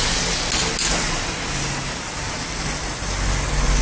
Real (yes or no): yes